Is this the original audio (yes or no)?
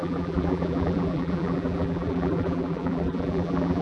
no